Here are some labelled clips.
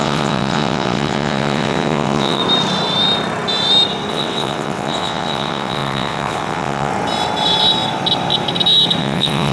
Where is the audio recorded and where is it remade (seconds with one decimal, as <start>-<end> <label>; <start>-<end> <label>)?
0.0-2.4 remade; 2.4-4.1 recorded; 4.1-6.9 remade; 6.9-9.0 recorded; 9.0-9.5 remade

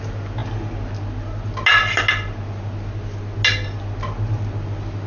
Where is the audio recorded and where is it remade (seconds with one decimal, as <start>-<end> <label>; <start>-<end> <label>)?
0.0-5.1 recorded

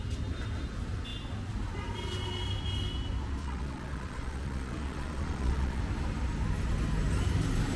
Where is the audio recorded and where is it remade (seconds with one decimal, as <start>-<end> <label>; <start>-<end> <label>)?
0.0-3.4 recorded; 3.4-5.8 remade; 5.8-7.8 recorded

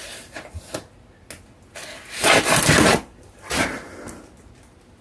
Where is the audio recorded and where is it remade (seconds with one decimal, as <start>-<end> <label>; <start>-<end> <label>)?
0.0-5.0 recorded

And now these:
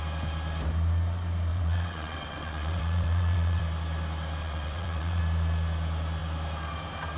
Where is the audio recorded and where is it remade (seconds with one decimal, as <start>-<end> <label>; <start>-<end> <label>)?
0.0-1.5 recorded; 1.5-3.6 remade; 3.6-4.4 recorded; 4.4-5.2 remade; 5.2-7.2 recorded

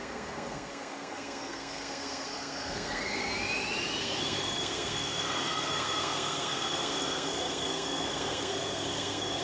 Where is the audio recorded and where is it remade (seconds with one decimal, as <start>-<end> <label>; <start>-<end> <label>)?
0.0-3.2 remade; 3.2-4.0 recorded; 4.0-9.4 remade